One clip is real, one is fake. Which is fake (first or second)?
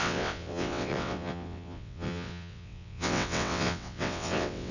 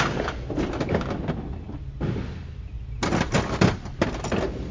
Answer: first